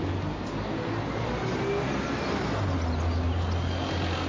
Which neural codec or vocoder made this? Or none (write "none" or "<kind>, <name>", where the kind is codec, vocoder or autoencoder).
none